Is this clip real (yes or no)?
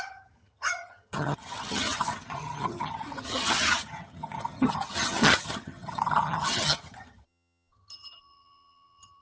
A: no